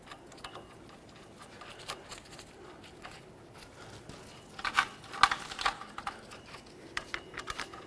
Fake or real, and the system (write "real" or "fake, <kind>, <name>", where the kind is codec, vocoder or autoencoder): real